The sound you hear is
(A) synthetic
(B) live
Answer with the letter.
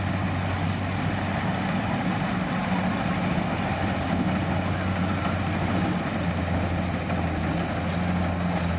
B